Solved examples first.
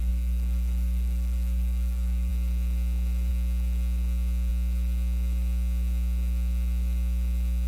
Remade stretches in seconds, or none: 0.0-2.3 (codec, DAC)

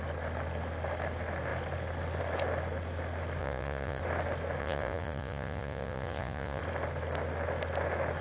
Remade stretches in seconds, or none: 3.4-4.0 (vocoder, Vocos); 4.6-6.6

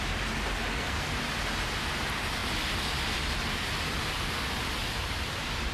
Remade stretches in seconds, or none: 0.7-1.2 (codec, SNAC)

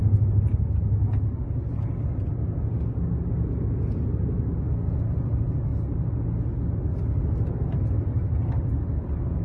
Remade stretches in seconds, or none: none

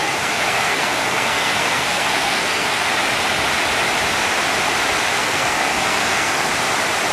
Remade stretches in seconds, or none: 0.0-2.9 (codec, SNAC); 5.1-6.5

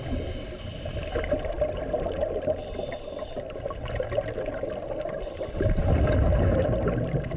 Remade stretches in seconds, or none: none